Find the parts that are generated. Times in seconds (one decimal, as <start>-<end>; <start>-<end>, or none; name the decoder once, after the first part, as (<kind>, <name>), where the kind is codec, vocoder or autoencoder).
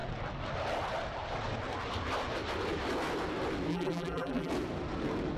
3.7-4.5 (vocoder, BigVGAN v2)